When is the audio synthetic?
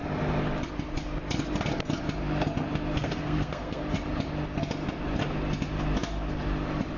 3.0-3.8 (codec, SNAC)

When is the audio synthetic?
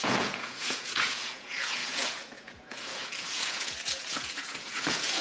0.0-5.2 (vocoder, Vocos)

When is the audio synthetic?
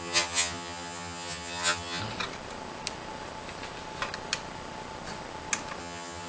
0.0-2.0 (vocoder, HiFi-GAN); 5.8-6.3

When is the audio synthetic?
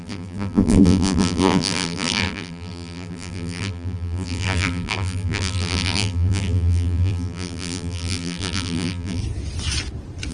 0.0-9.2 (vocoder, BigVGAN v2)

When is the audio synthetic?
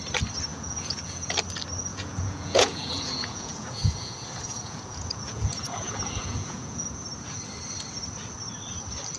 0.5-1.3 (vocoder, Vocos); 1.9-7.0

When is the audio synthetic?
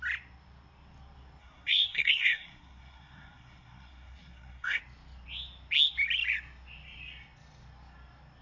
1.4-4.8 (codec, SNAC)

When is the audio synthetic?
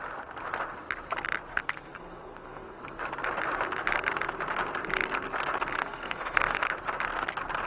1.5-2.8 (codec, SNAC); 5.7-6.6